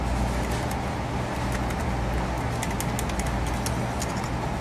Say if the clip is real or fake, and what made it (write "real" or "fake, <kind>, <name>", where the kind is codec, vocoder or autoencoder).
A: real